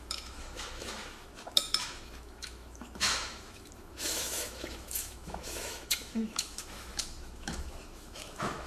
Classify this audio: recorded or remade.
remade